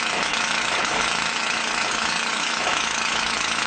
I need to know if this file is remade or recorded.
remade